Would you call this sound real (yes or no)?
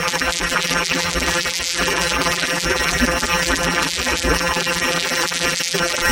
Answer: no